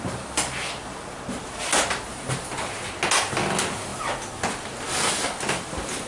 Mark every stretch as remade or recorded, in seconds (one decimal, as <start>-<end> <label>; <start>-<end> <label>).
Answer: 0.0-6.1 recorded